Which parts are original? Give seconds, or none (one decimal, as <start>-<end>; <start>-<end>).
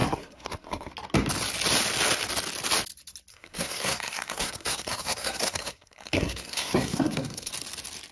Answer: 0.9-3.3; 7.5-8.1